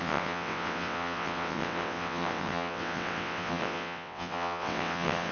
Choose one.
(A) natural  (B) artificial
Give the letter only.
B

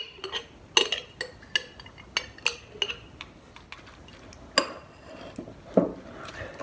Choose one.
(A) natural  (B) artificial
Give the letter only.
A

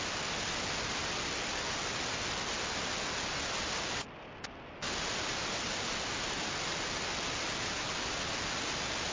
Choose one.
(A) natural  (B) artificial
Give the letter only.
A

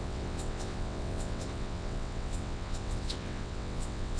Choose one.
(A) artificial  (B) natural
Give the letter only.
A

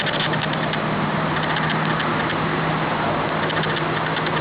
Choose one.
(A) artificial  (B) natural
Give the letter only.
B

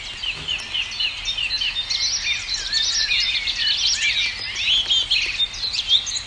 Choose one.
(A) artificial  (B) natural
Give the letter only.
B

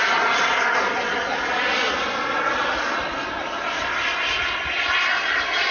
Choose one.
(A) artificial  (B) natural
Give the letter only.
B